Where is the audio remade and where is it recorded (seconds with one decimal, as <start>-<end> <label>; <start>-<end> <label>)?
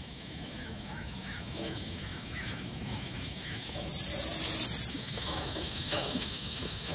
0.0-3.9 remade; 3.9-4.9 recorded; 4.9-6.9 remade